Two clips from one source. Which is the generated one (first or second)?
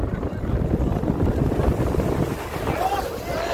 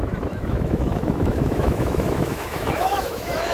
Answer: second